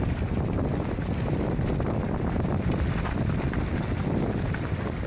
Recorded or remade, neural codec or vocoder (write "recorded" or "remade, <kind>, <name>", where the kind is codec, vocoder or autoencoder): remade, vocoder, BigVGAN v2